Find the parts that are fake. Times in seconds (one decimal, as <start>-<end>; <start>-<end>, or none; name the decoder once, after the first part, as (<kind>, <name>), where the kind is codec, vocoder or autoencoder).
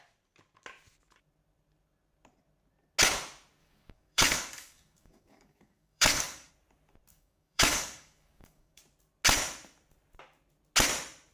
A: 3.6-6.5 (codec, DAC); 7.1-8.8